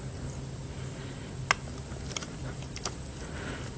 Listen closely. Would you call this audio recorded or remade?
recorded